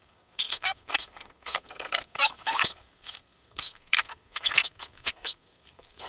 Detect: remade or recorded remade